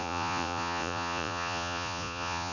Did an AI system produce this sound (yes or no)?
yes